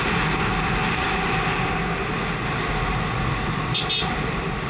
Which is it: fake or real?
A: real